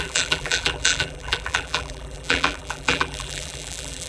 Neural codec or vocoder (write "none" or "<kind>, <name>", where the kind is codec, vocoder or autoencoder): vocoder, BigVGAN v2